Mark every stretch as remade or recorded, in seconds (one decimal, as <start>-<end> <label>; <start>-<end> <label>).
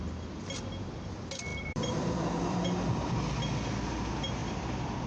0.0-1.5 recorded; 1.5-3.2 remade; 3.2-5.1 recorded